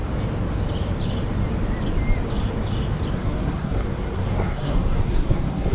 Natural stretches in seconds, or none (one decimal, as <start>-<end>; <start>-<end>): 0.0-3.1